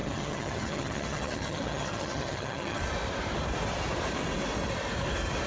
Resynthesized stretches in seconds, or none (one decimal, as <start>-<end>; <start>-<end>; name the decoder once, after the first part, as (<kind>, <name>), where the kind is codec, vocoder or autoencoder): 0.0-2.8 (vocoder, HiFi-GAN)